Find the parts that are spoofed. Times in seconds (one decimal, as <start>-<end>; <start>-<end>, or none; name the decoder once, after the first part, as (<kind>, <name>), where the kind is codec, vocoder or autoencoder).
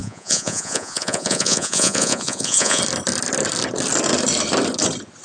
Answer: 0.0-2.8 (vocoder, Vocos)